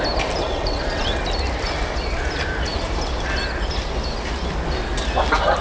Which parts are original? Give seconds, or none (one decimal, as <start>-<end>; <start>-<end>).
0.0-0.4; 1.2-5.6